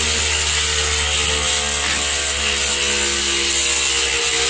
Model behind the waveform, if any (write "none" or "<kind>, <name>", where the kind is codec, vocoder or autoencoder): none